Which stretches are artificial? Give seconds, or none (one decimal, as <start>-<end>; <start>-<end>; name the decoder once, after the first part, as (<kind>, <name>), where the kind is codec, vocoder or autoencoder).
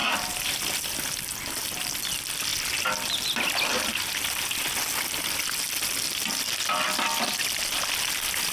0.0-0.8 (vocoder, BigVGAN v2)